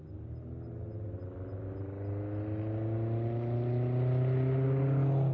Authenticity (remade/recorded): recorded